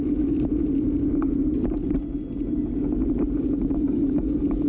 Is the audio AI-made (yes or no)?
no